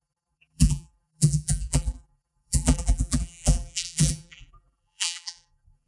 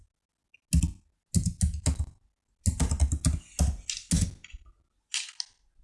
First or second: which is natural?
second